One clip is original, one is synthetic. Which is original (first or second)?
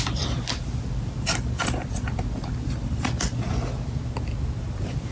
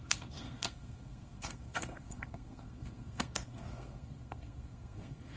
first